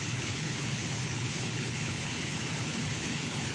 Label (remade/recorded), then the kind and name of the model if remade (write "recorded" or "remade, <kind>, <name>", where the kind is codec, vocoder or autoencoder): remade, codec, HILCodec